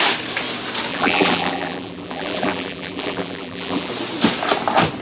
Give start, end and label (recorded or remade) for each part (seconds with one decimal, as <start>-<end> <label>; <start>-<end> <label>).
0.0-0.9 recorded; 0.9-3.9 remade; 3.9-5.0 recorded